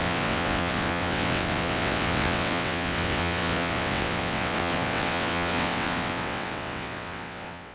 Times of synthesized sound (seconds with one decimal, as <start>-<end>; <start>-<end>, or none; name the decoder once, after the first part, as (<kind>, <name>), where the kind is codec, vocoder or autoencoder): 0.0-7.7 (vocoder, WaveNeXt)